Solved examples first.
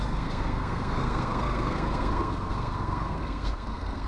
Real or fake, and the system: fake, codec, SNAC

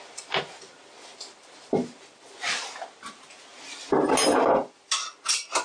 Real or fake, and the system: real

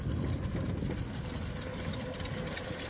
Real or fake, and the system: real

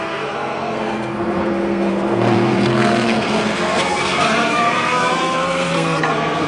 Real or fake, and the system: fake, codec, SNAC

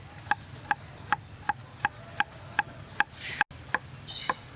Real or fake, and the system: real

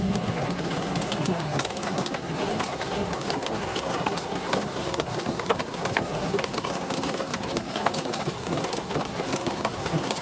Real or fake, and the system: fake, codec, SNAC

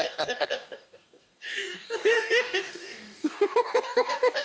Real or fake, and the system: fake, codec, DAC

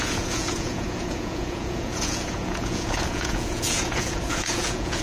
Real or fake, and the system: fake, vocoder, Vocos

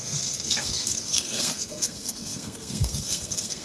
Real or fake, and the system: fake, codec, SNAC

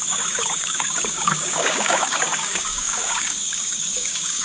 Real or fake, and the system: fake, codec, DAC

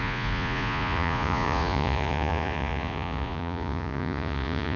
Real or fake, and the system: fake, vocoder, Vocos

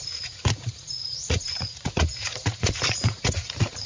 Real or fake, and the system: fake, vocoder, Vocos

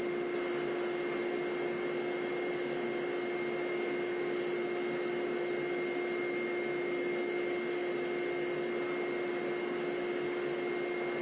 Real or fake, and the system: real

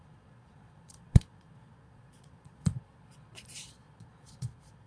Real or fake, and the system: fake, vocoder, Vocos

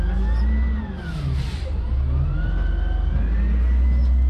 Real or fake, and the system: real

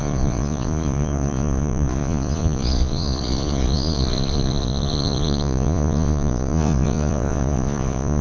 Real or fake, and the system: fake, vocoder, Vocos